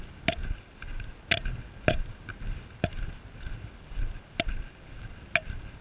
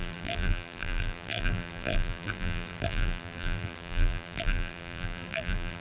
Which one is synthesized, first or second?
second